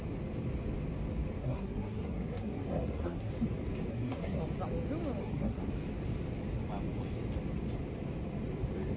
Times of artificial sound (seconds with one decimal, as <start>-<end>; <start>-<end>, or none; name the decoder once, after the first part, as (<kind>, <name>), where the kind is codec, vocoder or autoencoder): 1.4-3.3 (codec, SNAC); 3.9-4.4; 5.2-5.7